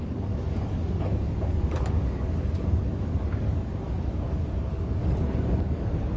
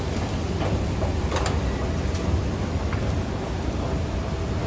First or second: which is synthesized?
first